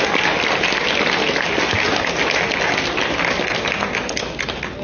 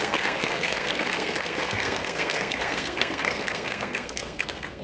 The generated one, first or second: second